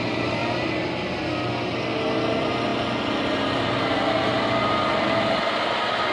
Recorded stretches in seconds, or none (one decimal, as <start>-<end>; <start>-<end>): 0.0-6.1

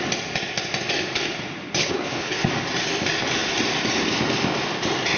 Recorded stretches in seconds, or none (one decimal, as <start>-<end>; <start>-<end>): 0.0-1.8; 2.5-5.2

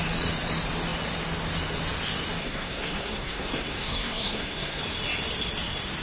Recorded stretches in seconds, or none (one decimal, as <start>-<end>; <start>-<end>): 0.0-2.4; 4.8-6.0

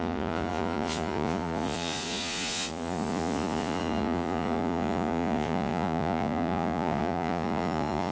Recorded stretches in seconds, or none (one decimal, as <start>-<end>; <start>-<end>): none

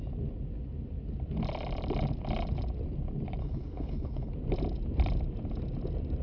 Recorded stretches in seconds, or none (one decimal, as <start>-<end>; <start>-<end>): 0.0-3.4; 4.3-6.2

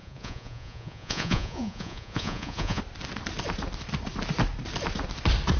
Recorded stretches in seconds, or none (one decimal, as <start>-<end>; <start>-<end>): 2.8-5.6